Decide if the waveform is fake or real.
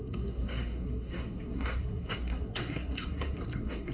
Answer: fake